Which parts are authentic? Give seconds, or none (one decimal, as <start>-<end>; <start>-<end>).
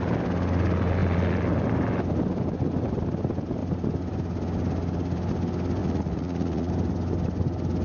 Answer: 0.0-5.8; 6.7-7.8